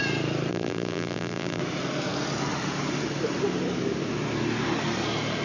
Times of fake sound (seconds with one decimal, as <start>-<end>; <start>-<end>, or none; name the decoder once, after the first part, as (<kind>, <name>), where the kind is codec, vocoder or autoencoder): 0.5-1.6 (vocoder, BigVGAN v2)